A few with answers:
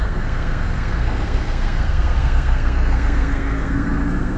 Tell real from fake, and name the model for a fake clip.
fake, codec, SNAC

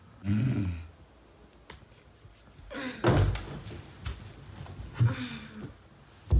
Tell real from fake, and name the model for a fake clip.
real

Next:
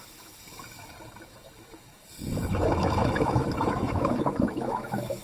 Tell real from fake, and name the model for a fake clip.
fake, autoencoder, DAC-VAE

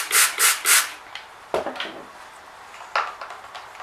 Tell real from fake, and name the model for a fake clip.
real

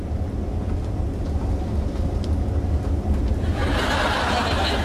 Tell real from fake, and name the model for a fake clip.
real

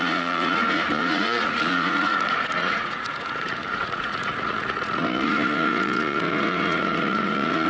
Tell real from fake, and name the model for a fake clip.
fake, vocoder, Vocos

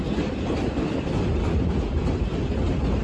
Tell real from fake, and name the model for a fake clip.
real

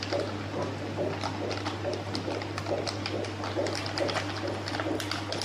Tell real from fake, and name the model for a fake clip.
real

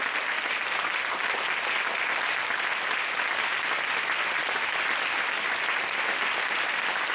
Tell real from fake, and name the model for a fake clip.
real